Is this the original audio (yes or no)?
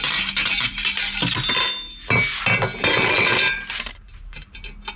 yes